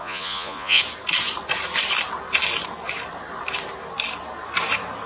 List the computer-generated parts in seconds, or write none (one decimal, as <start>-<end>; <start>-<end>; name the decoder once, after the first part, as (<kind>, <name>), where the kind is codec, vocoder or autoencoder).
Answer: 0.0-0.8 (vocoder, Vocos)